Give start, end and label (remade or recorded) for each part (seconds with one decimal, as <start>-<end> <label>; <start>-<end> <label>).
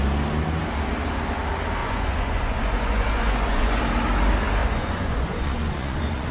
0.0-1.8 recorded; 1.8-3.8 remade; 3.8-4.6 recorded; 4.6-6.3 remade